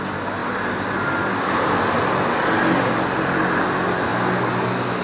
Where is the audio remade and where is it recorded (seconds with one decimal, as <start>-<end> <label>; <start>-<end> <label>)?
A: 0.0-5.0 recorded